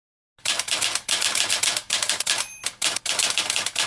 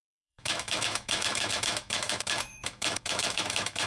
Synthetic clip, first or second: second